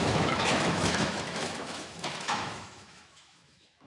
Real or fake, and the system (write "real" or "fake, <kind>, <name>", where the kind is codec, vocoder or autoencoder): fake, autoencoder, DAC-VAE